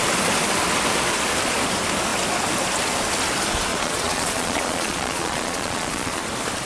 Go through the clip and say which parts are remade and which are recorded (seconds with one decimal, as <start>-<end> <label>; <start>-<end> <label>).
0.0-3.7 recorded; 3.7-6.2 remade; 6.2-6.7 recorded